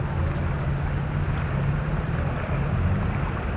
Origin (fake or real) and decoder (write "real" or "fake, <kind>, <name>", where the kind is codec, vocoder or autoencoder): real